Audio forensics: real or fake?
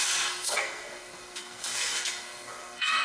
fake